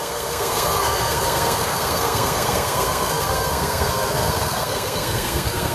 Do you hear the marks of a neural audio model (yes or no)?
yes